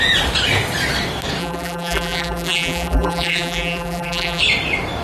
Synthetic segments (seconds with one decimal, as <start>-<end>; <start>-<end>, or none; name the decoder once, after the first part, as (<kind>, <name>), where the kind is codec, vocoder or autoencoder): 1.4-4.4 (vocoder, BigVGAN v2)